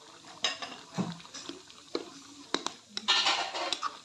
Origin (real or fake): real